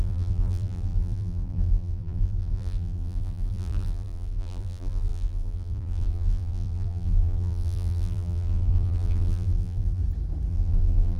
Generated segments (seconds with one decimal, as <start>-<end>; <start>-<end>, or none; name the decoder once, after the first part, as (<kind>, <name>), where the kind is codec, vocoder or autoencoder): 0.0-10.0 (vocoder, BigVGAN v2); 10.5-11.2